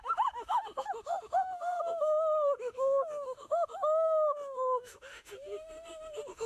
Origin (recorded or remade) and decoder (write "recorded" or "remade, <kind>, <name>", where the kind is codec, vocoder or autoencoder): remade, autoencoder, DAC-VAE